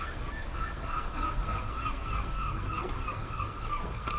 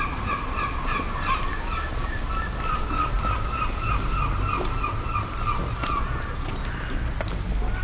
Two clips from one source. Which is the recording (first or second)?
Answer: second